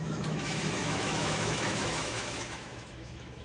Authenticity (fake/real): fake